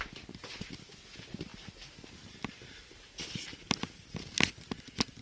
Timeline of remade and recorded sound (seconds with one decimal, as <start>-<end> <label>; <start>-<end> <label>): 0.0-5.2 recorded

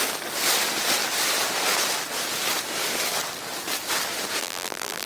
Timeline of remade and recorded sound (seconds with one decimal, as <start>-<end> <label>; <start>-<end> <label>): 0.0-4.4 recorded; 4.4-5.1 remade

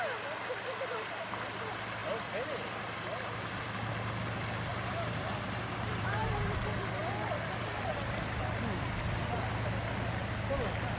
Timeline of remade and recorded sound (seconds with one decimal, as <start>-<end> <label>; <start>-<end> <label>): 0.0-4.7 recorded; 4.7-6.3 remade; 6.3-11.0 recorded